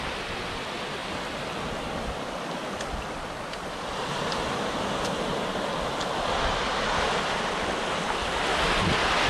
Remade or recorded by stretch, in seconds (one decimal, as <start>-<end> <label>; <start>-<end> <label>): 0.0-9.3 recorded